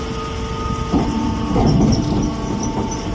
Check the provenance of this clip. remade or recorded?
recorded